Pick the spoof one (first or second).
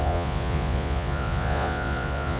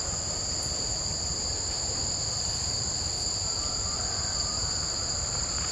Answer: first